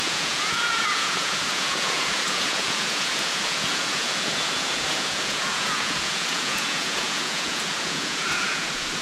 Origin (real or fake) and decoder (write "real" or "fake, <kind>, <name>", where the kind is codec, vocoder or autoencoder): fake, vocoder, Vocos